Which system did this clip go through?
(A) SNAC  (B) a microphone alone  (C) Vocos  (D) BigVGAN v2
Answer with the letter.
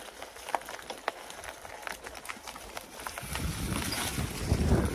B